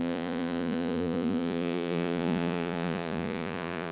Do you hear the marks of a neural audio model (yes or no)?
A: yes